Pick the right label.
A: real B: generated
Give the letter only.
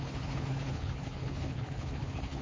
B